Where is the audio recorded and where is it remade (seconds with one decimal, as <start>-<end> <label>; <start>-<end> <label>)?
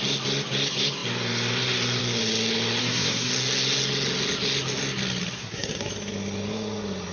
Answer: 0.0-2.8 recorded; 2.8-3.3 remade; 3.3-5.4 recorded; 5.4-5.9 remade; 5.9-7.1 recorded